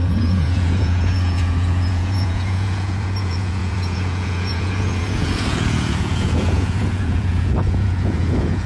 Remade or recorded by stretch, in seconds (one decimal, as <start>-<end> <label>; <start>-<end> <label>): 0.0-8.7 remade